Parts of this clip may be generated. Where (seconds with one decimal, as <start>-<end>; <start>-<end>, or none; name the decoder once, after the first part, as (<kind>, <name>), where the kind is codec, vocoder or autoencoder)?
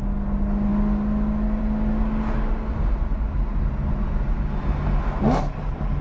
none